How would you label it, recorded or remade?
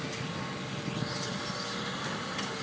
recorded